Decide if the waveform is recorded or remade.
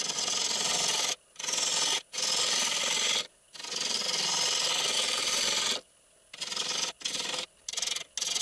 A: recorded